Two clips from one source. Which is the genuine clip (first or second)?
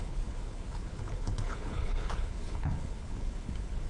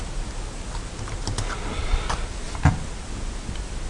second